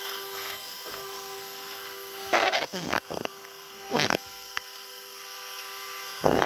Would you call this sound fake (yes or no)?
yes